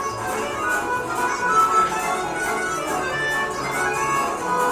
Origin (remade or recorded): recorded